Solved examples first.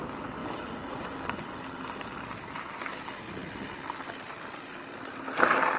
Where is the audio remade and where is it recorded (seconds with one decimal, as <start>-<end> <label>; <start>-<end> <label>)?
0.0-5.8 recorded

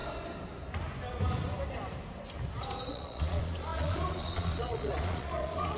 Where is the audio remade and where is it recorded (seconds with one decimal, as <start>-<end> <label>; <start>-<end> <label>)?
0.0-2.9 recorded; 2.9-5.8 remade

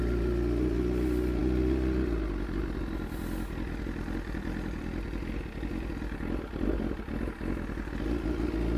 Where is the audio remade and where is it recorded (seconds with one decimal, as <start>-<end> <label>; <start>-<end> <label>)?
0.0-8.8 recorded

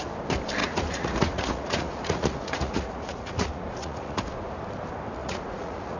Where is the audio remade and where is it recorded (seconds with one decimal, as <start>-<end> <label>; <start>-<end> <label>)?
0.0-0.6 recorded; 0.6-4.2 remade; 4.2-5.2 recorded; 5.2-6.0 remade

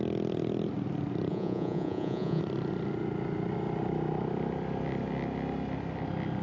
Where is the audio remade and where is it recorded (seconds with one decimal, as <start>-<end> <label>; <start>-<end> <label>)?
0.0-1.3 recorded; 1.3-2.4 remade; 2.4-6.4 recorded

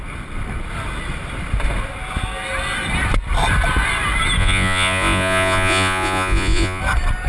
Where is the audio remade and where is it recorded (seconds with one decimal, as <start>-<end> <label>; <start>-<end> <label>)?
0.0-4.4 recorded; 4.4-6.8 remade; 6.8-7.3 recorded

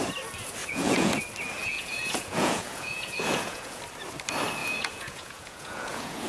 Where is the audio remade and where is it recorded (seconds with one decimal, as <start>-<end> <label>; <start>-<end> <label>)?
0.0-0.6 recorded; 0.6-1.2 remade; 1.2-1.6 recorded; 1.6-3.8 remade; 3.8-4.6 recorded; 4.6-6.3 remade

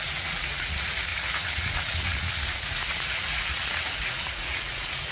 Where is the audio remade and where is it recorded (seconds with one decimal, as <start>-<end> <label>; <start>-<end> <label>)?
0.0-5.1 remade